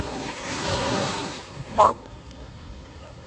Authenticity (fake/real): fake